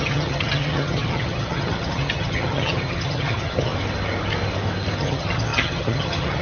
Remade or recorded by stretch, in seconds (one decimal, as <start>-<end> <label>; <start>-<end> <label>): 0.0-3.7 remade; 3.7-5.0 recorded; 5.0-6.4 remade